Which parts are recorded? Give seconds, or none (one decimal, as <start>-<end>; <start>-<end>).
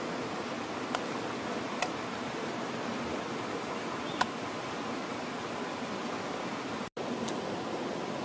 0.0-8.2